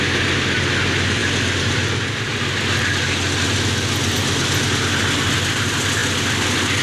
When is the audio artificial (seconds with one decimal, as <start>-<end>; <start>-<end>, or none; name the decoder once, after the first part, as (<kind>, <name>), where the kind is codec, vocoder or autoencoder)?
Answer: none